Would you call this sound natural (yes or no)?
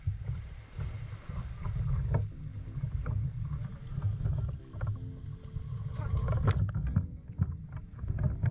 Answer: yes